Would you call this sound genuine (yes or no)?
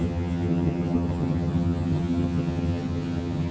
no